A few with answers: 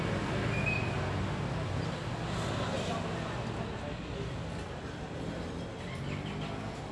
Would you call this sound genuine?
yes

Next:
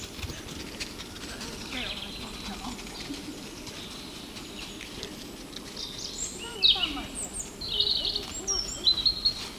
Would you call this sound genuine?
yes